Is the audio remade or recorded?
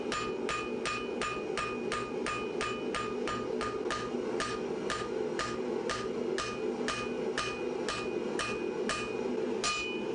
recorded